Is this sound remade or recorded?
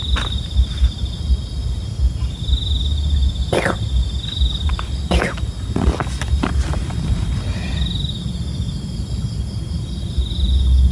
recorded